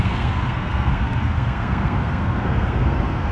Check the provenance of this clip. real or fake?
fake